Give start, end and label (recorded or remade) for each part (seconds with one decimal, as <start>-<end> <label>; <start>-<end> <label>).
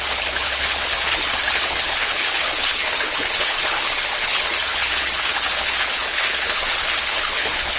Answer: 0.0-7.8 remade